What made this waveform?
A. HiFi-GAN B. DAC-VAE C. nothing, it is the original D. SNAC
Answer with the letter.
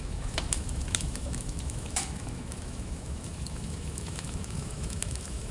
B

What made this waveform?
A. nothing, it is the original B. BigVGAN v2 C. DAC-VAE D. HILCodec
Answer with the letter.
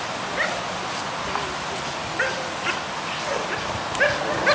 A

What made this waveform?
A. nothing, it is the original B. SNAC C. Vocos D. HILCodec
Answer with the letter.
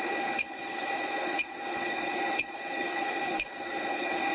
D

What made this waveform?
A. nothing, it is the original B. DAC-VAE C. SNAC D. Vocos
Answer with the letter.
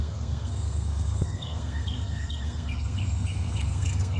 C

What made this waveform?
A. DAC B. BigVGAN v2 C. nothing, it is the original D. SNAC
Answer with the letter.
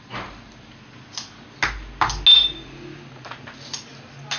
C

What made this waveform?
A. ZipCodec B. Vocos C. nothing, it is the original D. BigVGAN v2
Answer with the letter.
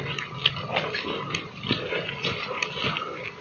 C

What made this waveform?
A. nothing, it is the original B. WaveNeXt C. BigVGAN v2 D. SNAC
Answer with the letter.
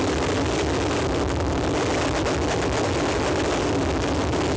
A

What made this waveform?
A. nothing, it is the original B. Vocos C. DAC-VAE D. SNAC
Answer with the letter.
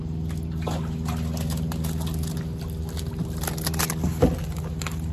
A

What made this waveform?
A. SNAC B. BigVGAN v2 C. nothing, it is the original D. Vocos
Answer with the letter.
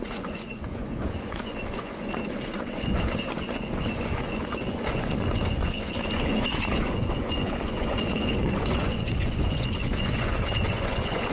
D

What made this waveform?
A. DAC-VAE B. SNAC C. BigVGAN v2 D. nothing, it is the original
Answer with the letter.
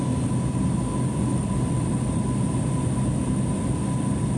D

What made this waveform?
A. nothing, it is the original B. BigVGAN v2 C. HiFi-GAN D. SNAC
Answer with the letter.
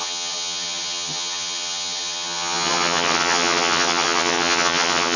C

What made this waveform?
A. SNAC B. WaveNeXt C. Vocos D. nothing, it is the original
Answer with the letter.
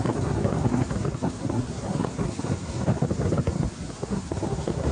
A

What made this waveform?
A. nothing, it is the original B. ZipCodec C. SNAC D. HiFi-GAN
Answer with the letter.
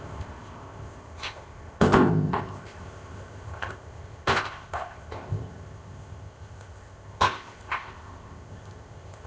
B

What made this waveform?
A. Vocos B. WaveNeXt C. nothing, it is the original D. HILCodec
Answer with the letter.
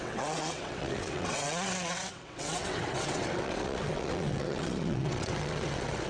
B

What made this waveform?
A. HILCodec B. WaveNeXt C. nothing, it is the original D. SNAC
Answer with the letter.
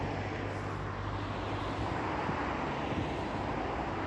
C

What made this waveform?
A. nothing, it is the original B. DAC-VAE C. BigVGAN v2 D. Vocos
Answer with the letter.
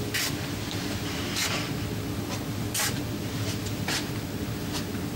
A